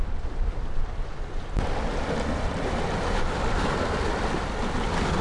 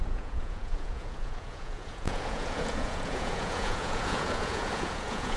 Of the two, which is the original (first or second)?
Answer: first